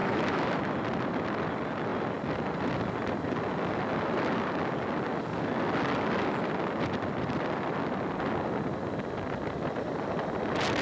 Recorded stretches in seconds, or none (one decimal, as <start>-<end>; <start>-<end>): 0.6-10.8